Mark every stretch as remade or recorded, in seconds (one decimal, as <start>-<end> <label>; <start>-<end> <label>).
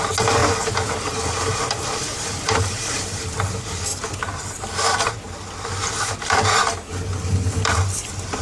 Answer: 0.0-8.4 recorded